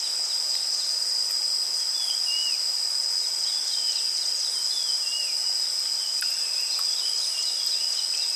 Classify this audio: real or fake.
real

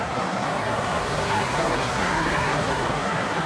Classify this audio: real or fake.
fake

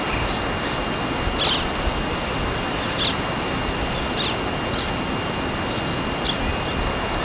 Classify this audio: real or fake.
real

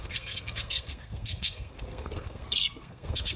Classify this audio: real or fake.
fake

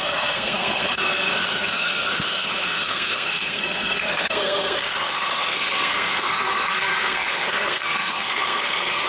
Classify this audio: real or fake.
fake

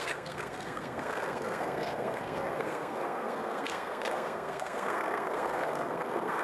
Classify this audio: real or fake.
fake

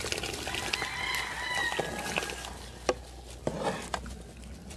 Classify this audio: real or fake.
real